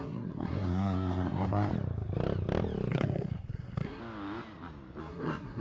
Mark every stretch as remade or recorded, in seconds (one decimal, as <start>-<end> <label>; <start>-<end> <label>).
0.0-1.7 remade; 1.7-2.9 recorded; 2.9-4.0 remade; 4.0-5.0 recorded; 5.0-5.6 remade